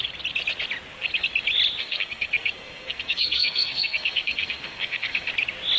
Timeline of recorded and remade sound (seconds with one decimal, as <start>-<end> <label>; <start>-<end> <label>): 0.0-1.8 recorded; 1.8-5.3 remade; 5.3-5.8 recorded